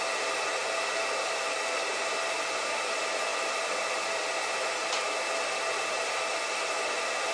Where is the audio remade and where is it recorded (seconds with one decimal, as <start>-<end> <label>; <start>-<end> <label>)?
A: 0.0-7.3 recorded